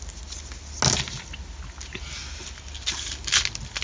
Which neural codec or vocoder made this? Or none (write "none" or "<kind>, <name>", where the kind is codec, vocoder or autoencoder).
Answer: none